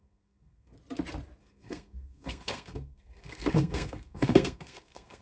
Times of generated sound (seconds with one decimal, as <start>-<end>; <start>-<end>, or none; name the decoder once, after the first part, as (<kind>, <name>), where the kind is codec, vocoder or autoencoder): 0.0-0.7 (codec, SNAC); 1.4-5.2